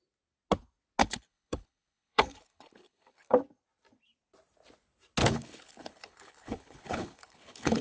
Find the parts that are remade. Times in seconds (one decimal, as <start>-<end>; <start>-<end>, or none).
1.0-3.4; 5.2-7.8